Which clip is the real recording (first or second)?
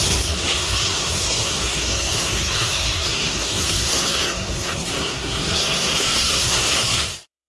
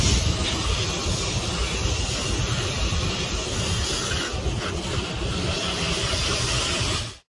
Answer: second